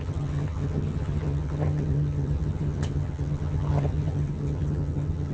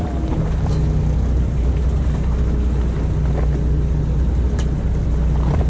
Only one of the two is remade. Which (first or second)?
first